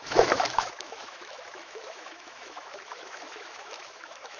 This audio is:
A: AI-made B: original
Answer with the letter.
A